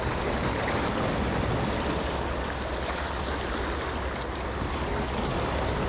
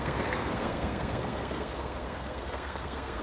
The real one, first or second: first